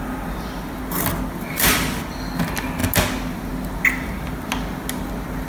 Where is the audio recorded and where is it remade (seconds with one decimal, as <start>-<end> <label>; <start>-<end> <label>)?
0.0-5.5 recorded